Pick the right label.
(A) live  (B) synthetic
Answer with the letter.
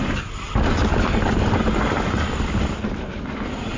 A